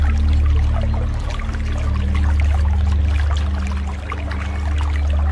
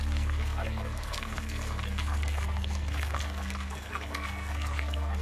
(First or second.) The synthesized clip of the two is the second